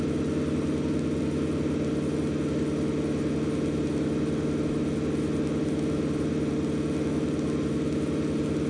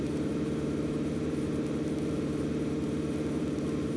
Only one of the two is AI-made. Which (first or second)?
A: second